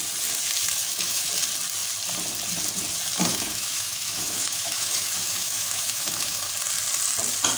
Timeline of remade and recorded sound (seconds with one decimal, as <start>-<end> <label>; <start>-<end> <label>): 0.0-0.8 recorded; 0.8-1.3 remade; 1.3-3.3 recorded; 3.3-6.5 remade; 6.5-7.6 recorded